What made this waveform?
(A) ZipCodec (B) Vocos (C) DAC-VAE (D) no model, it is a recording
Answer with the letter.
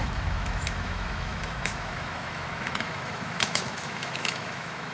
C